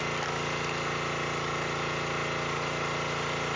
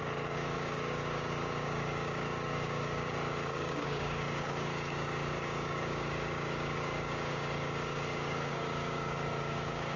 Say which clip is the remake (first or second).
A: second